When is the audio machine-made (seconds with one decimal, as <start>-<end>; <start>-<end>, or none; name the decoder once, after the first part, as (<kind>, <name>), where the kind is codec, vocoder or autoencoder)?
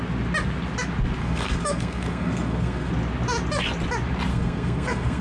1.2-2.9 (codec, SNAC); 4.3-5.2